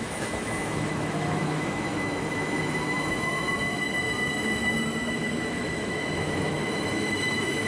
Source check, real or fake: fake